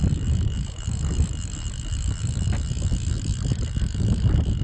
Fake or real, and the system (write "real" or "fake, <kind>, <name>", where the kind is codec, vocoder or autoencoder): real